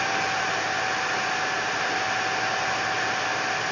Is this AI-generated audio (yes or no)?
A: no